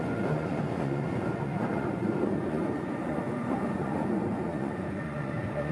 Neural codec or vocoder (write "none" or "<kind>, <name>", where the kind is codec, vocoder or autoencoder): vocoder, Vocos